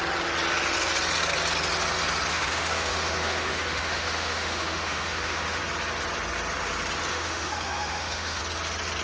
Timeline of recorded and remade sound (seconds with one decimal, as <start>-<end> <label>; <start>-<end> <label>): 0.0-2.3 recorded; 2.3-5.6 remade; 5.6-7.1 recorded; 7.1-8.4 remade; 8.4-9.0 recorded